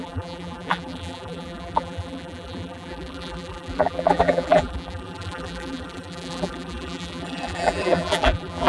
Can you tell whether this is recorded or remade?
remade